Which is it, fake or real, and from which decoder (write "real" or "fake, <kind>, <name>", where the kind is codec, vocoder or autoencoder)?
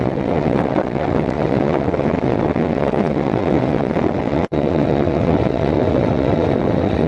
fake, vocoder, WaveNeXt